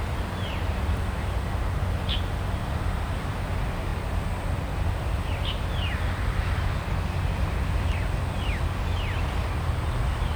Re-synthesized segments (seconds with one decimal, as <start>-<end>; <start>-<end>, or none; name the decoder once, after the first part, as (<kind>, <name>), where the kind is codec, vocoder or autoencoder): none